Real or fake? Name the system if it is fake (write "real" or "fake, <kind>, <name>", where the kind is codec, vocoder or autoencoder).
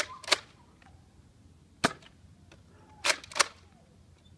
real